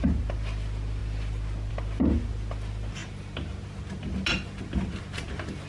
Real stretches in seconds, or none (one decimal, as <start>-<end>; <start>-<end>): 0.0-5.7